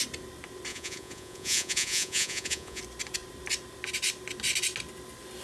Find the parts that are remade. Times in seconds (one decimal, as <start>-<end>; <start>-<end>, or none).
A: 0.7-2.8